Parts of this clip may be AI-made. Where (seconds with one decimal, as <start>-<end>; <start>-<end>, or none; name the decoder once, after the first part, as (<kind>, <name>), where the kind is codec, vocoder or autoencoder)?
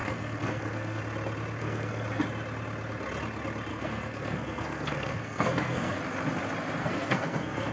0.0-1.0 (codec, SNAC); 1.6-2.2; 3.7-6.0; 6.8-7.7